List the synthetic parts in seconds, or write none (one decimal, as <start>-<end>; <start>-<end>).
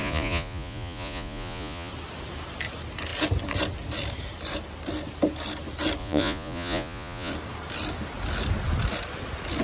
0.0-1.9; 6.0-7.3